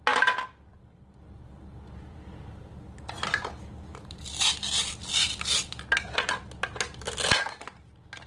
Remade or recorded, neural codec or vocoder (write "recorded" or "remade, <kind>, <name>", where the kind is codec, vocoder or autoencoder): recorded